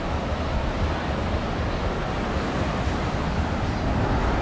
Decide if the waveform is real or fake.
real